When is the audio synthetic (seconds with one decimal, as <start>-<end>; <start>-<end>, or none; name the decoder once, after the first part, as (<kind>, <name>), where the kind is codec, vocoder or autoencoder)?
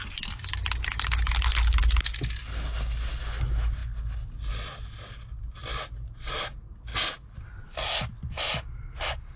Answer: none